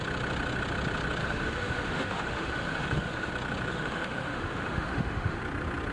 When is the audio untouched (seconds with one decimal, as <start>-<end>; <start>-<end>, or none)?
0.0-1.2; 3.3-3.7; 5.4-5.9